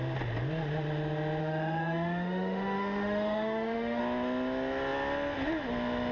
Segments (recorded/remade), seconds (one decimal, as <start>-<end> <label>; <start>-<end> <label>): 0.0-1.4 recorded; 1.4-4.0 remade; 4.0-6.1 recorded

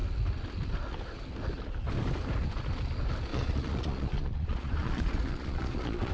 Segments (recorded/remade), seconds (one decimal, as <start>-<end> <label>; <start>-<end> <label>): 0.0-3.3 recorded; 3.3-6.1 remade

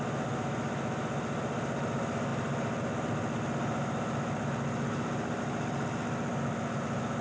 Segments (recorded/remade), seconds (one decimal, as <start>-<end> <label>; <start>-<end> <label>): 0.0-7.2 recorded

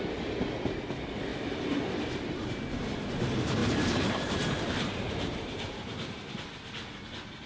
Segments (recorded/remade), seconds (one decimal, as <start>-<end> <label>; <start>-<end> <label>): 0.0-1.3 recorded; 1.3-2.5 remade; 2.5-3.6 recorded; 3.6-6.4 remade; 6.4-7.5 recorded

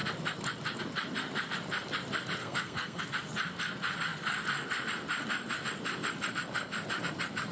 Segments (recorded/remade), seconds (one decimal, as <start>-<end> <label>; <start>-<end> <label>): 0.0-2.4 recorded; 2.4-3.0 remade; 3.0-7.5 recorded

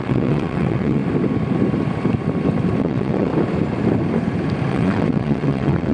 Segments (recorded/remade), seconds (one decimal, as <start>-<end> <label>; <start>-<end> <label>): 0.0-1.0 remade; 1.0-2.8 recorded; 2.8-3.3 remade; 3.3-4.7 recorded; 4.7-5.9 remade